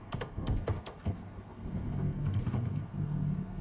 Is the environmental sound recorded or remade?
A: remade